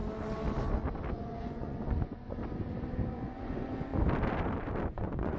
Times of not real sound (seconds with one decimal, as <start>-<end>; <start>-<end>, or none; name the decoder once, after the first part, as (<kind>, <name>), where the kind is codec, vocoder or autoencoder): 1.1-2.4 (vocoder, Vocos); 3.1-3.9; 4.9-5.4

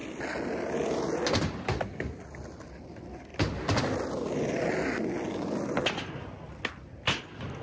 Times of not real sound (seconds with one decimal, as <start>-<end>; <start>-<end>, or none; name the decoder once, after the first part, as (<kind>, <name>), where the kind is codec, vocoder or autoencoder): none

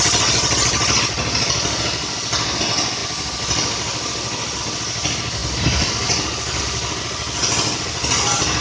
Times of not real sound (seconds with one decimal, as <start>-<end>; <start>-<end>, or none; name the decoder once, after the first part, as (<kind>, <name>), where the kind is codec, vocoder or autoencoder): none

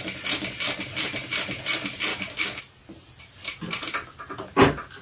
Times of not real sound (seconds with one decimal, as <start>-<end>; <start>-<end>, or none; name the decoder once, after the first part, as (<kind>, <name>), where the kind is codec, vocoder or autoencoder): 2.1-2.6 (codec, DAC)

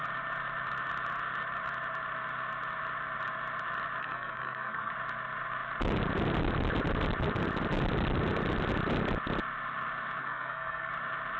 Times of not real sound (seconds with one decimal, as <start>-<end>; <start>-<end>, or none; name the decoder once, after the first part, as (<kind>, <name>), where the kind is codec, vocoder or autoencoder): 4.0-4.9 (codec, SNAC); 10.2-10.9

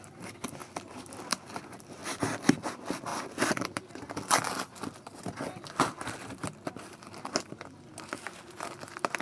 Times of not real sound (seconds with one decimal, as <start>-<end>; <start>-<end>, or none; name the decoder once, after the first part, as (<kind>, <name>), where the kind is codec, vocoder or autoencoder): 2.0-2.7 (vocoder, BigVGAN v2)

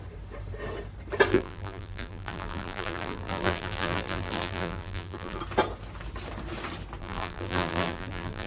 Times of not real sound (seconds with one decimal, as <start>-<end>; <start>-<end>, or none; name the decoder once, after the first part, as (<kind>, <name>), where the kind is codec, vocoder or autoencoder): 1.3-5.4 (vocoder, BigVGAN v2); 7.0-8.5